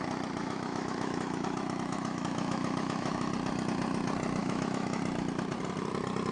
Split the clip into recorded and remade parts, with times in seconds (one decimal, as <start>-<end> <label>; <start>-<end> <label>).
0.0-0.4 recorded; 0.4-3.3 remade; 3.3-4.4 recorded; 4.4-5.0 remade; 5.0-6.3 recorded